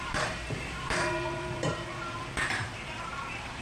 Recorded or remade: remade